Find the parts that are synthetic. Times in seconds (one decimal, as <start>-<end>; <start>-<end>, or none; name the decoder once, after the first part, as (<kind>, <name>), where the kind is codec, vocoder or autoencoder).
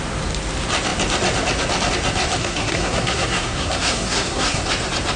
2.4-4.6 (codec, SNAC)